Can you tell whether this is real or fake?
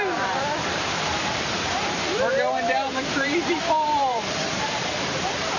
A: fake